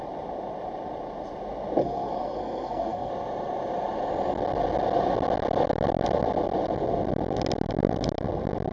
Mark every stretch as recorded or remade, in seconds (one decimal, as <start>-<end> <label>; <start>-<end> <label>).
0.0-1.8 recorded; 1.8-3.1 remade; 3.1-8.7 recorded